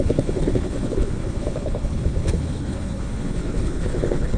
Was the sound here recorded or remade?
remade